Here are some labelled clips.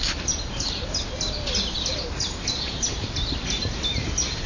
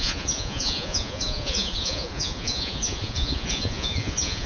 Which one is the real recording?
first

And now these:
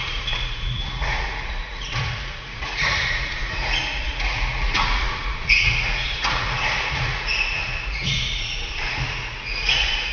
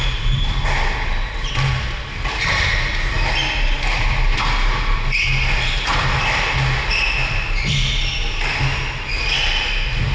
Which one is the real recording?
second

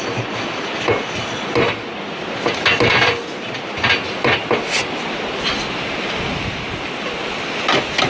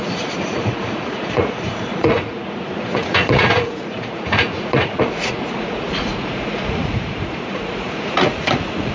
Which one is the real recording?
first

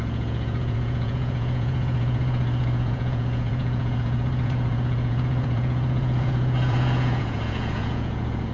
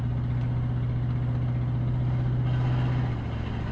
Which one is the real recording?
second